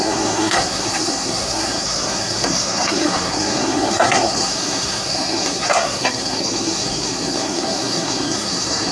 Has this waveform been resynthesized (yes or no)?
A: yes